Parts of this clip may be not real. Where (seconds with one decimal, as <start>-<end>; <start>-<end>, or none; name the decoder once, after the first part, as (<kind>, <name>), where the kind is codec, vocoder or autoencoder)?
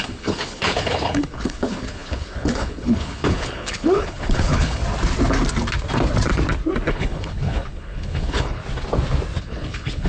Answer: 0.0-4.8 (codec, HILCodec); 6.9-8.6; 9.4-10.1